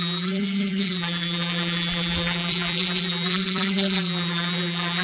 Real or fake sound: fake